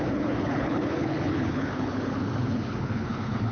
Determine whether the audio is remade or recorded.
remade